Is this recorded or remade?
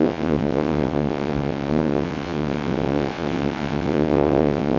remade